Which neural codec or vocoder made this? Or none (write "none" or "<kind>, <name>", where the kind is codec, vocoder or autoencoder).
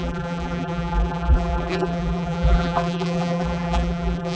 vocoder, BigVGAN v2